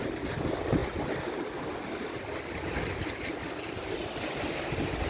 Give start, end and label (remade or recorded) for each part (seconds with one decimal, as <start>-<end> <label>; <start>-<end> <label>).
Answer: 0.0-5.1 recorded